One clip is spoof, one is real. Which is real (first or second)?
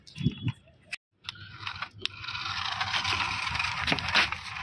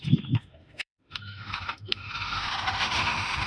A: first